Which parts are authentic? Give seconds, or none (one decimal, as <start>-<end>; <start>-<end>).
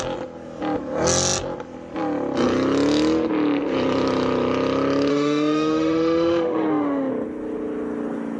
0.0-5.1; 7.1-8.4